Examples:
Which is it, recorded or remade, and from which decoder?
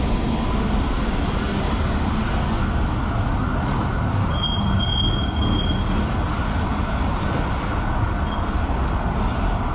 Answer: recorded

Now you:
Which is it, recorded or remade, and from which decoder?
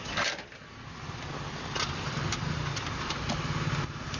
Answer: recorded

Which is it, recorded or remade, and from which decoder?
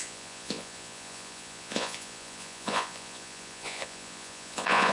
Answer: remade, vocoder, Vocos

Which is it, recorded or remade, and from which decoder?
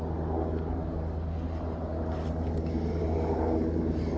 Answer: recorded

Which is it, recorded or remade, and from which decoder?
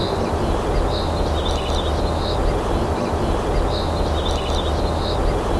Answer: recorded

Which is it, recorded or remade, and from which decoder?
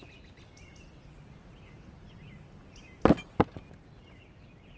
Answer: recorded